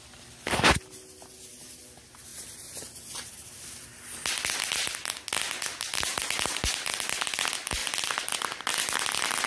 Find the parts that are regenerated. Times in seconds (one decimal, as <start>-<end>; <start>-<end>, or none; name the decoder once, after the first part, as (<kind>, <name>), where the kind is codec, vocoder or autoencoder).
2.3-3.7 (vocoder, BigVGAN v2)